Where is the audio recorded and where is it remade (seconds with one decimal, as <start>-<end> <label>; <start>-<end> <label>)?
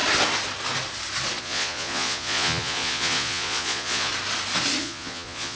0.0-1.4 recorded; 1.4-4.1 remade; 4.1-4.8 recorded; 4.8-5.6 remade